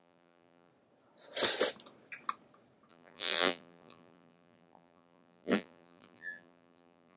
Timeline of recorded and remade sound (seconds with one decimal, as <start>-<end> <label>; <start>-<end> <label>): 0.0-0.7 remade; 0.7-2.9 recorded; 2.9-7.2 remade